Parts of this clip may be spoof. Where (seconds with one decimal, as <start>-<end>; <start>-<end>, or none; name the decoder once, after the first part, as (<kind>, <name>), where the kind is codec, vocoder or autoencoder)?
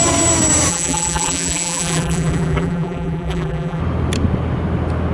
0.7-3.8 (vocoder, BigVGAN v2)